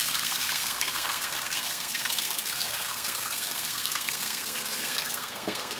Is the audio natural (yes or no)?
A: no